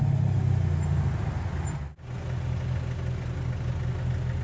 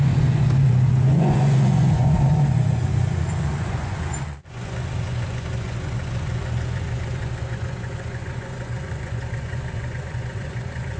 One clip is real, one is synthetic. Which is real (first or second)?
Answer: first